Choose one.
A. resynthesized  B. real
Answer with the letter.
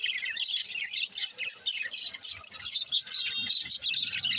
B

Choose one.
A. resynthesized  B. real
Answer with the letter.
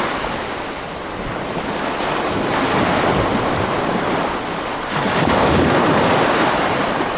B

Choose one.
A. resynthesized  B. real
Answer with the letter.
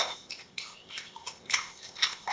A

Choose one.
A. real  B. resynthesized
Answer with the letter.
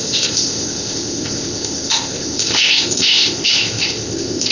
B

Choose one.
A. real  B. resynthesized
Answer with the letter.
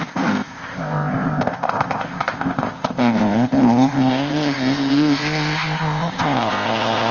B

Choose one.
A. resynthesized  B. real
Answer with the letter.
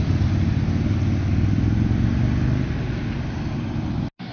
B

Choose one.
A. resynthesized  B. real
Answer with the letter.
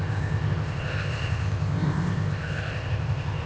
A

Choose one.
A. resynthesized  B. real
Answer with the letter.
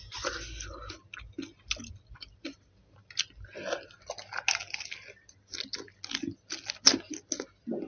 B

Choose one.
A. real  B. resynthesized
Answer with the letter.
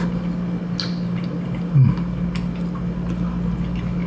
A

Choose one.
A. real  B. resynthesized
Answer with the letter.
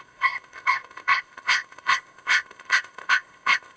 B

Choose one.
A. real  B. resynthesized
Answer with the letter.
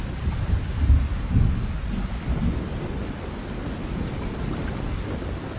A